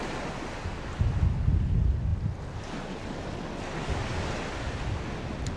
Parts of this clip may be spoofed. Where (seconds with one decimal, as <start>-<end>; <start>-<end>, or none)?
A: none